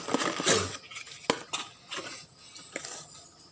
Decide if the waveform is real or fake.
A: real